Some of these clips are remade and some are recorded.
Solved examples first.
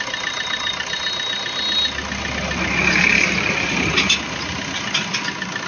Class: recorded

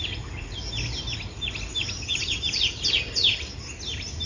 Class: recorded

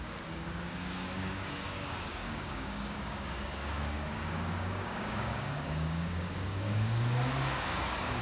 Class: remade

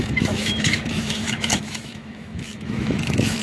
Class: remade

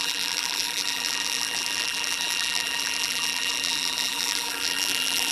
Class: remade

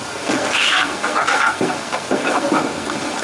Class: remade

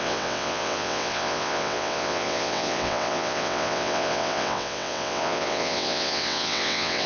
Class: remade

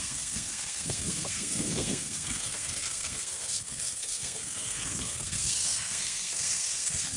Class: remade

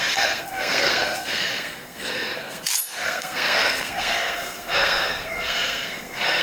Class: remade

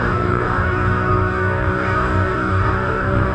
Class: remade